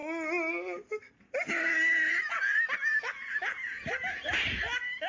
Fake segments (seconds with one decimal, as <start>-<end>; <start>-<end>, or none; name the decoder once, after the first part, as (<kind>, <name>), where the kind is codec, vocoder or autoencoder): none